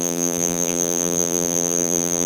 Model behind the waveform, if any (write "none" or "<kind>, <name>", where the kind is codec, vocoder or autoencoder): vocoder, BigVGAN v2